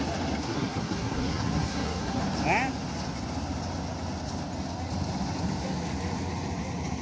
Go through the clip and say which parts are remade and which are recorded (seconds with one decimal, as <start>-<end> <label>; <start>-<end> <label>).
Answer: 0.0-0.4 recorded; 0.4-2.2 remade; 2.2-7.0 recorded